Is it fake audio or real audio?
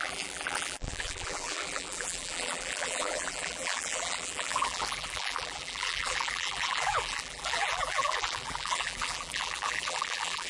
fake